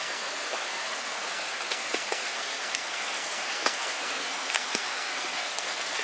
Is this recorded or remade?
remade